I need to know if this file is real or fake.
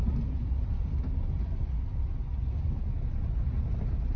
real